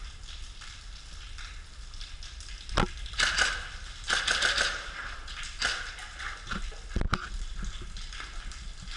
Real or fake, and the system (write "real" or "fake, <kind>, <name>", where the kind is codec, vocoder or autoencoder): real